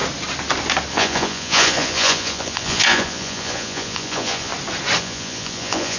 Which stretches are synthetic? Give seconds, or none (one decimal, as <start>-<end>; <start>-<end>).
0.9-4.5; 5.0-6.0